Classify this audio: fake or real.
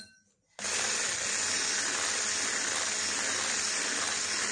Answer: real